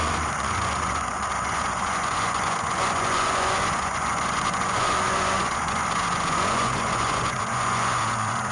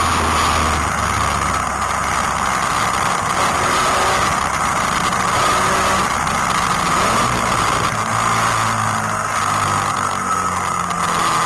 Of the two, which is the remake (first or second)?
first